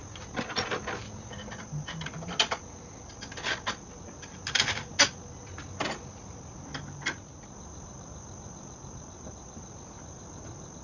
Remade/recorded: recorded